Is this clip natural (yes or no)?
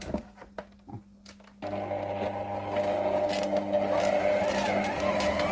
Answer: yes